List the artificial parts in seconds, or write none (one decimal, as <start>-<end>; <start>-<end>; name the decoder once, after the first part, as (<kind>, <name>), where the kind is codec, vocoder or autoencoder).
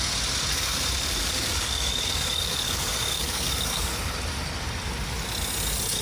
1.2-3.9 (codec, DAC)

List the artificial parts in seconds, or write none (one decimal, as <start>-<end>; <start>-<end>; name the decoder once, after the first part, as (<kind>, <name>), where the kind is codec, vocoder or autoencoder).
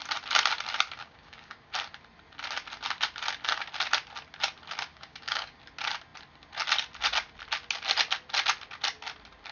1.0-1.7 (codec, DAC); 4.9-5.6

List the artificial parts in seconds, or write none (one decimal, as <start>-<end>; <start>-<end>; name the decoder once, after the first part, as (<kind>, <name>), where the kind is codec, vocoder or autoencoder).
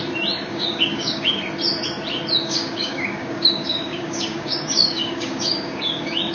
0.5-1.4 (codec, DAC); 2.4-6.3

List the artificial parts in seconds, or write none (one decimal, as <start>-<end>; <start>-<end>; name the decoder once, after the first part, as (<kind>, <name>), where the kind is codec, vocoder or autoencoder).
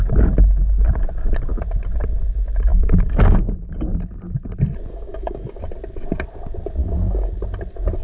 2.7-3.5 (codec, DAC); 4.9-5.6; 6.8-7.3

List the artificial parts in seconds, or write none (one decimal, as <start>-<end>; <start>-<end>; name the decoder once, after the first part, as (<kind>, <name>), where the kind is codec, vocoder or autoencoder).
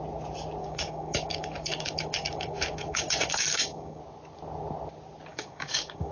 0.6-4.0 (codec, DAC); 5.3-6.1